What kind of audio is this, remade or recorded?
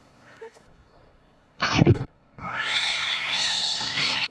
remade